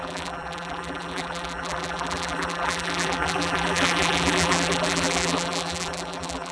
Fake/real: fake